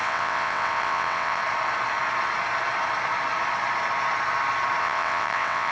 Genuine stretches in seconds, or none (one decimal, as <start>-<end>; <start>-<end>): 1.4-4.8